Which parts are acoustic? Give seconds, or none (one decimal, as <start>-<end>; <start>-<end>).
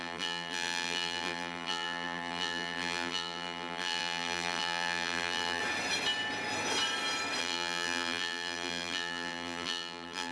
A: 5.6-7.4